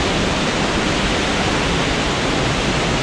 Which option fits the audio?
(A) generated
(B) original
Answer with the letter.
B